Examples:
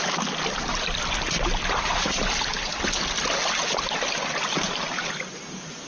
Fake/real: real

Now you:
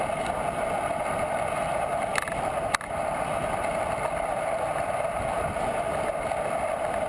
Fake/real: real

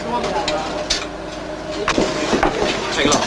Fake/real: real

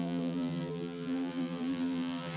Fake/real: fake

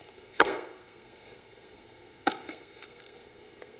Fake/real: fake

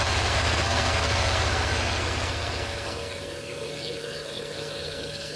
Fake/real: fake